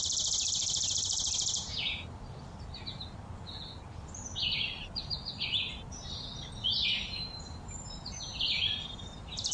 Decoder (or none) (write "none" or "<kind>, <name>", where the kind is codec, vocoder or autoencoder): vocoder, BigVGAN v2